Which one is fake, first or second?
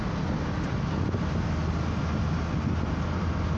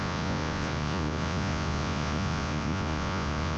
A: second